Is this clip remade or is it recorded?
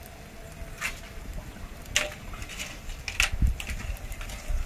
recorded